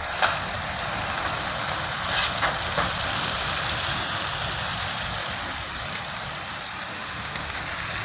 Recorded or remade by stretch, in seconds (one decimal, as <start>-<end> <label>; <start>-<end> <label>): 0.0-6.9 recorded; 6.9-7.6 remade; 7.6-8.0 recorded